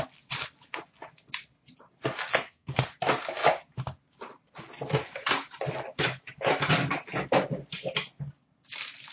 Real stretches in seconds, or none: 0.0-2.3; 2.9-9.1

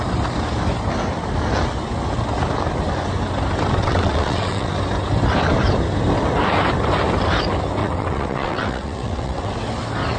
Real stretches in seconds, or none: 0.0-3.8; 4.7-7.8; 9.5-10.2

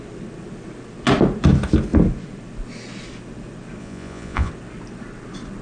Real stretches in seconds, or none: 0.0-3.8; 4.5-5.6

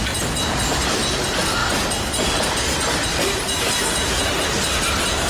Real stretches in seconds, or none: 0.0-5.3